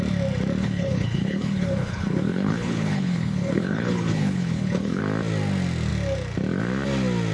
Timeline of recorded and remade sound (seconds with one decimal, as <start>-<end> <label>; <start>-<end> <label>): 0.0-0.6 recorded; 0.6-5.0 remade; 5.0-7.3 recorded